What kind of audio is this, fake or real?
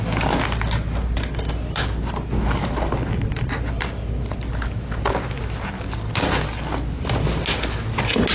real